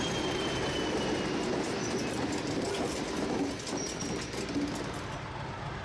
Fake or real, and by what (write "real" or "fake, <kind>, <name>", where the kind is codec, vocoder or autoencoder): real